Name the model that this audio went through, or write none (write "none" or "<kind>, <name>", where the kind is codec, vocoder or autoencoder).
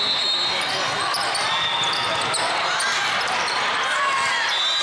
none